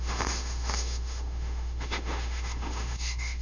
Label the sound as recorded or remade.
remade